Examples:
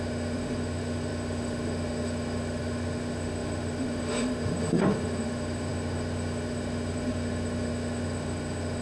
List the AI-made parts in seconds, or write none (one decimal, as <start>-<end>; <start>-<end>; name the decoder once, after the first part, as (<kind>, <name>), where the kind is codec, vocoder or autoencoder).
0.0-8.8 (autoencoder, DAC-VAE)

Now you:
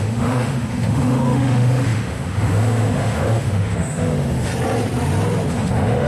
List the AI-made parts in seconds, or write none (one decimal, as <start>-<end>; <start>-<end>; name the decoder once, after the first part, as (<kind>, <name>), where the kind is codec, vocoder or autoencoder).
0.0-4.5 (autoencoder, DAC-VAE); 5.5-6.1

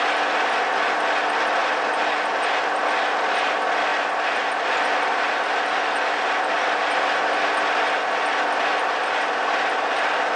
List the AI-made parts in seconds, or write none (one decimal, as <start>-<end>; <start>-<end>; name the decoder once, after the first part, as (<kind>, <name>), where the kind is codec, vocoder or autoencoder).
none

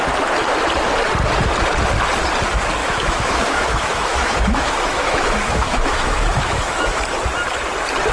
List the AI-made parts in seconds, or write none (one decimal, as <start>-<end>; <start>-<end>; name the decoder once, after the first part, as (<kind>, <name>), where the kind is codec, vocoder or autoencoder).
2.8-7.0 (autoencoder, DAC-VAE)

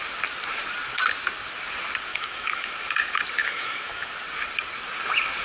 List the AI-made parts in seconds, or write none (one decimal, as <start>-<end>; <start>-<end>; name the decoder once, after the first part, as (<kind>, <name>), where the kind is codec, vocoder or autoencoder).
2.1-2.7 (autoencoder, DAC-VAE); 3.4-4.1

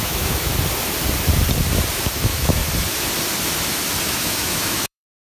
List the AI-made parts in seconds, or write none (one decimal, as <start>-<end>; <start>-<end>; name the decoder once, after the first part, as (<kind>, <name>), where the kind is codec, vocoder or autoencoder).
0.0-0.5 (autoencoder, DAC-VAE); 2.1-2.6; 4.0-5.3